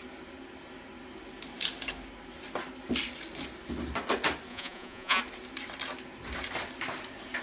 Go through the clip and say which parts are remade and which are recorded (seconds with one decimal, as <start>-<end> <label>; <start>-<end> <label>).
0.0-4.5 recorded; 4.5-5.2 remade; 5.2-7.4 recorded